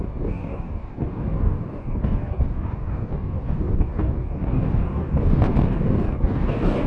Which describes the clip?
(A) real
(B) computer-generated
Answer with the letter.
B